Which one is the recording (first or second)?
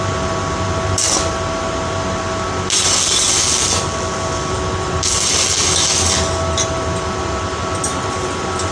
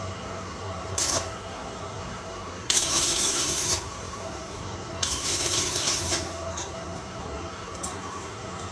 first